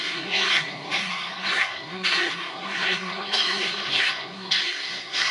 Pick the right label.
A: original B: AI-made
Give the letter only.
B